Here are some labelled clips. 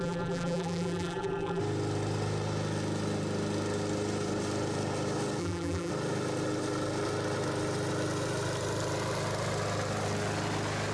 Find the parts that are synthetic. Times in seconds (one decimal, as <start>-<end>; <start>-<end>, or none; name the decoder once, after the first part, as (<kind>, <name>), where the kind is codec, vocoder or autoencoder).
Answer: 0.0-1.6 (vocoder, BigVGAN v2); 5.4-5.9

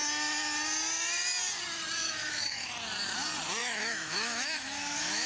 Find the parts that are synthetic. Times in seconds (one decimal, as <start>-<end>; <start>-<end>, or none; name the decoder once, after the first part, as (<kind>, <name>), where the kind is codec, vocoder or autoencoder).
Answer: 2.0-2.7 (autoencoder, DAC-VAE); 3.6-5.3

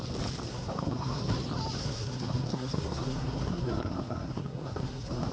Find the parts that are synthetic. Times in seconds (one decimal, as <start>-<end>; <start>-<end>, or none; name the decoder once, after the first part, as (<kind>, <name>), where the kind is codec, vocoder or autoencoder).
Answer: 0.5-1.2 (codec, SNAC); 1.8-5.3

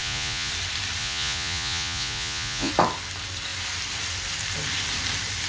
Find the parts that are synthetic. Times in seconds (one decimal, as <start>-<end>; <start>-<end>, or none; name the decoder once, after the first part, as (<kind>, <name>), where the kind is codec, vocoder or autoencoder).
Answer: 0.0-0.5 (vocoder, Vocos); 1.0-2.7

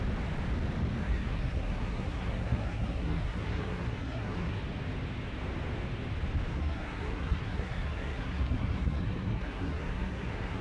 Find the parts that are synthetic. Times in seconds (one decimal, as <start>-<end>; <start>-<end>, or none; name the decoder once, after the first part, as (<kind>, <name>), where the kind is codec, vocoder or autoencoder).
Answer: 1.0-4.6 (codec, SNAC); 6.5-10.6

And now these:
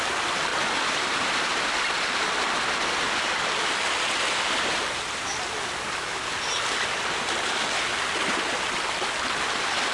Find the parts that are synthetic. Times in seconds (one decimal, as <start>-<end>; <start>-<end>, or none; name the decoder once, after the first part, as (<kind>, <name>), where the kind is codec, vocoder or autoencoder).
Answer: 0.5-1.5 (vocoder, BigVGAN v2)

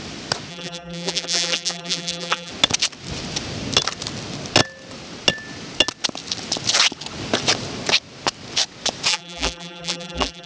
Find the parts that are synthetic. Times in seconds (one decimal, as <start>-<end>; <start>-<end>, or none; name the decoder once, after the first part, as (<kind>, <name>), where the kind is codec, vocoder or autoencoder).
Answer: 0.5-2.5 (vocoder, BigVGAN v2); 9.1-10.5